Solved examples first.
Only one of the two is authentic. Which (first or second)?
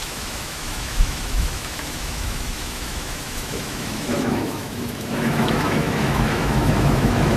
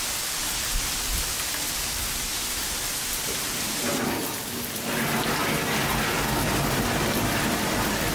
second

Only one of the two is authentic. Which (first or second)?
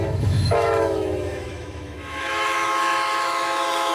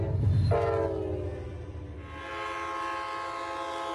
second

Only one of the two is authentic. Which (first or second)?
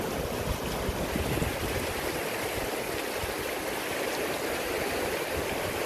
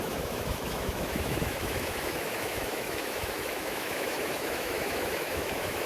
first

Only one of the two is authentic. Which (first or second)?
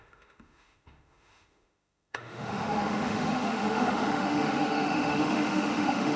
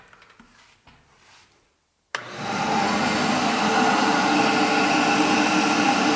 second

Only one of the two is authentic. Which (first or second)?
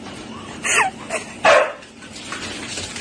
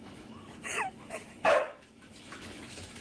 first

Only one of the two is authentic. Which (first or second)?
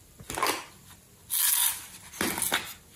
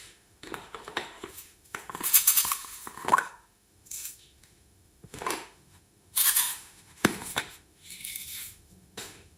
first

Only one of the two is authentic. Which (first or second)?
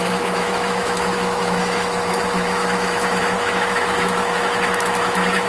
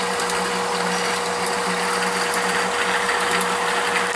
second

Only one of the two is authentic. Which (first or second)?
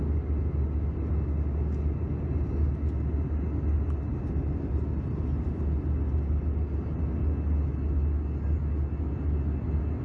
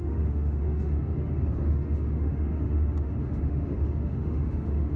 first